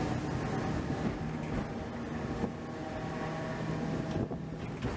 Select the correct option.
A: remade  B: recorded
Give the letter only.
B